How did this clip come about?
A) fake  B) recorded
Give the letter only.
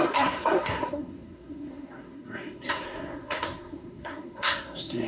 A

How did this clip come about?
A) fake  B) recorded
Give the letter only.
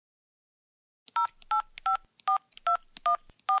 B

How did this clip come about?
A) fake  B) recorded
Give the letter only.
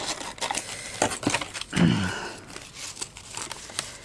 B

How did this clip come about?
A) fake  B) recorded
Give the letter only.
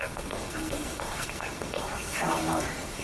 A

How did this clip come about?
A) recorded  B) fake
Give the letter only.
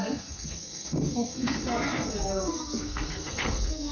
B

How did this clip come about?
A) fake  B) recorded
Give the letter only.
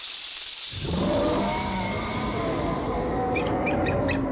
B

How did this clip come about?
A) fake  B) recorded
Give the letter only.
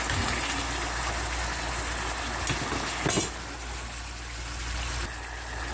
B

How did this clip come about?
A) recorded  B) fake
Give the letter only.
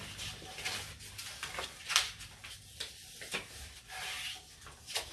A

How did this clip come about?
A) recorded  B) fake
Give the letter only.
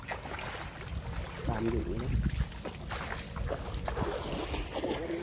A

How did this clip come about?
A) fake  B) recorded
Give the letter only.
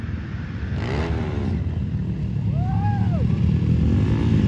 B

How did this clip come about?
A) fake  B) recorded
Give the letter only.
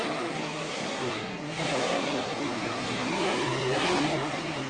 A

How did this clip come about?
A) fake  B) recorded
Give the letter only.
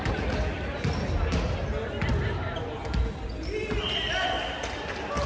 B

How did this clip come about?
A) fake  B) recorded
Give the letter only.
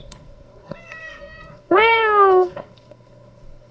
A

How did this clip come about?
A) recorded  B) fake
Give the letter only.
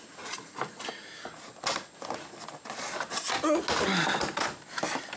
A